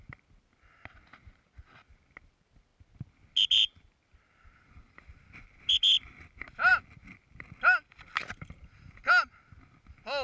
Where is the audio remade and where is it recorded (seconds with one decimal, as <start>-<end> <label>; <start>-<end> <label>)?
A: 0.0-10.2 recorded